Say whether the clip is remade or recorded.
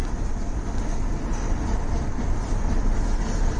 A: recorded